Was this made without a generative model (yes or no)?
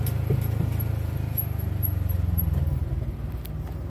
yes